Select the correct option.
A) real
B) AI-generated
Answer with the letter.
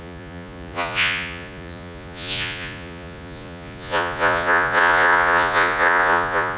B